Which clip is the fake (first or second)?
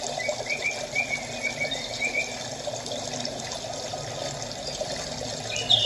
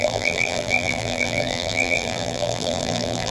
second